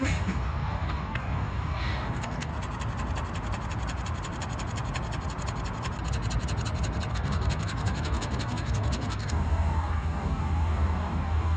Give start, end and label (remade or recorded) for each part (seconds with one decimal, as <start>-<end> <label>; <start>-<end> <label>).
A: 0.0-2.5 remade; 2.5-7.1 recorded; 7.1-11.6 remade